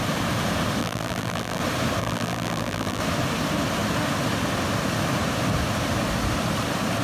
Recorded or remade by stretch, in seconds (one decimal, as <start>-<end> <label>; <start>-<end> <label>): 0.0-0.8 recorded; 0.8-1.6 remade; 1.6-2.0 recorded; 2.0-3.0 remade; 3.0-7.0 recorded